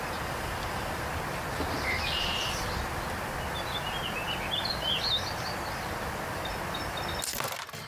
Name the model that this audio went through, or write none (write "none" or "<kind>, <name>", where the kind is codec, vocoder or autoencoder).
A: none